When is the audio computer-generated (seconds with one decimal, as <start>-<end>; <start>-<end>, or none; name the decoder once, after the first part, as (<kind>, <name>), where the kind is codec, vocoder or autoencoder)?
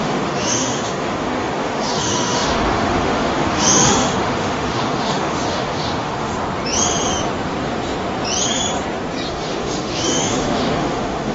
0.0-6.3 (autoencoder, DAC-VAE); 9.3-11.3